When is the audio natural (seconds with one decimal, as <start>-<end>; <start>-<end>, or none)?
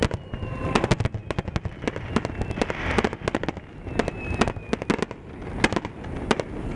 0.0-6.8